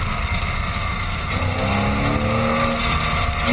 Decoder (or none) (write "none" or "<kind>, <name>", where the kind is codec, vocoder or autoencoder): none